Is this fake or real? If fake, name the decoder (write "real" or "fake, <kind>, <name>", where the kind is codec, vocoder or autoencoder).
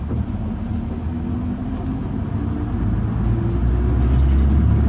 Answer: real